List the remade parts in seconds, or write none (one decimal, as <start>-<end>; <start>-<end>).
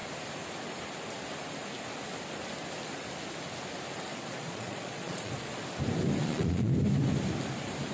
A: 4.1-5.3; 6.2-6.7